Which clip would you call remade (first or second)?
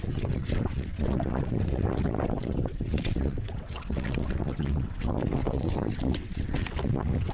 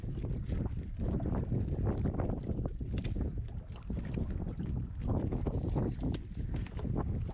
first